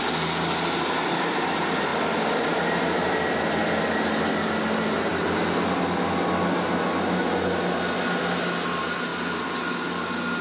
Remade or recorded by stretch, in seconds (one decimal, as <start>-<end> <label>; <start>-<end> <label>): 0.0-10.4 recorded